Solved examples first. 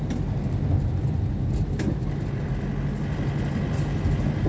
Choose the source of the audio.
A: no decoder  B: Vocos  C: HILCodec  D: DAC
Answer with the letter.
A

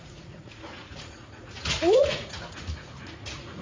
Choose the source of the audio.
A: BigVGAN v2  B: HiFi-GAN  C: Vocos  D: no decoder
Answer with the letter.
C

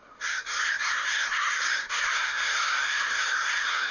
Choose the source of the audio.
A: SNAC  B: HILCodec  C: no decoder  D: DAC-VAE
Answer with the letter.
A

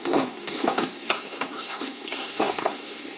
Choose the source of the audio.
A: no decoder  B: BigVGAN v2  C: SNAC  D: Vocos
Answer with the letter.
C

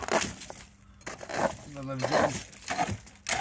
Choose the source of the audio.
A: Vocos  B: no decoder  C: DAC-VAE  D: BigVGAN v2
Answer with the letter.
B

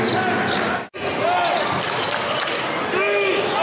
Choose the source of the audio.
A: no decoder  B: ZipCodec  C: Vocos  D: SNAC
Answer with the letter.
A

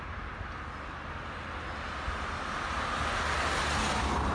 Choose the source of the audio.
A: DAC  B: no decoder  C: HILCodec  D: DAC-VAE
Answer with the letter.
B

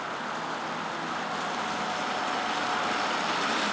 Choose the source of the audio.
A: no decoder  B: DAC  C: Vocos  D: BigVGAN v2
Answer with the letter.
A